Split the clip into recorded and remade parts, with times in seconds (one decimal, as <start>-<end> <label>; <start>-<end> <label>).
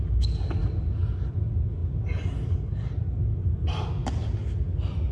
0.0-5.1 recorded